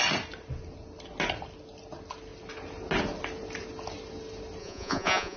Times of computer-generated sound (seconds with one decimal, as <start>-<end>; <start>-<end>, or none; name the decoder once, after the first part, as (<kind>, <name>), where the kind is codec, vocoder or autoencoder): 4.6-5.4 (vocoder, Vocos)